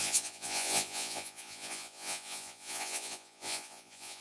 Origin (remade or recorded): remade